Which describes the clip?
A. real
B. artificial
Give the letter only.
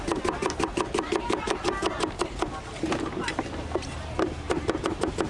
A